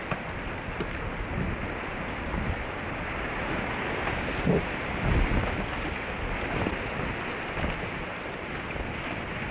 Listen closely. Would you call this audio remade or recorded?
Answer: recorded